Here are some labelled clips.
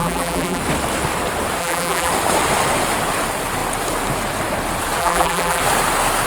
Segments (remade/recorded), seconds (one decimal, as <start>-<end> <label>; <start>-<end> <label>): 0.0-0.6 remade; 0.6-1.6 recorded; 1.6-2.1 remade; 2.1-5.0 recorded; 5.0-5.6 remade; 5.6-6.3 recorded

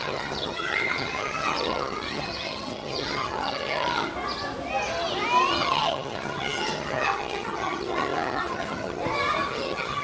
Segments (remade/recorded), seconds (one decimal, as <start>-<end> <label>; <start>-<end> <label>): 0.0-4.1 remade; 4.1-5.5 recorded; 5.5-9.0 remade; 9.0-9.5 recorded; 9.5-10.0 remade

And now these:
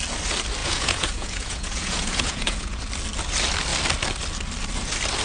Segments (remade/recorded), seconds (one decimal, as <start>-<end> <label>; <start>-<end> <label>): 0.0-0.6 recorded; 0.6-2.8 remade; 2.8-5.2 recorded

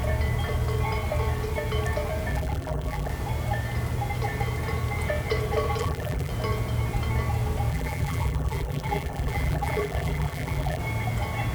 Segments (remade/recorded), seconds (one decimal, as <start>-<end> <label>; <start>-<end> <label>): 0.0-2.3 recorded; 2.3-3.1 remade; 3.1-5.8 recorded; 5.8-6.3 remade; 6.3-7.7 recorded; 7.7-10.8 remade; 10.8-11.5 recorded

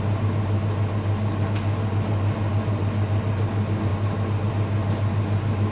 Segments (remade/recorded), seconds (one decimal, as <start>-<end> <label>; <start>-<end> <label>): 0.0-5.7 recorded